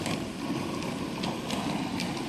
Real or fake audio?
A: real